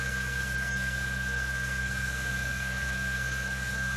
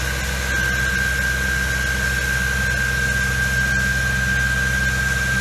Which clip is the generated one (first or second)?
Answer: first